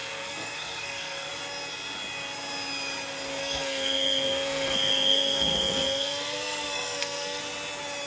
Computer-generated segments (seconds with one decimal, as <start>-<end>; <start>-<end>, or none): 0.0-1.3; 3.4-7.4